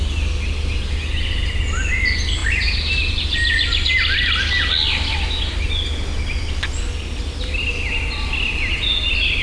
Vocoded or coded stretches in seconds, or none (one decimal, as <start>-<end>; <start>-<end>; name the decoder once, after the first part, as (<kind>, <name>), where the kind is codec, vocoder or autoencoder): none